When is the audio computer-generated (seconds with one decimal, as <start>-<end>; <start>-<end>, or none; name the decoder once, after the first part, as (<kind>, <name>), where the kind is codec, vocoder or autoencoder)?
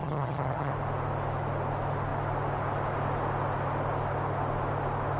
0.0-0.7 (vocoder, HiFi-GAN)